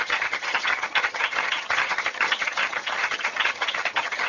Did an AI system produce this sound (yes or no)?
yes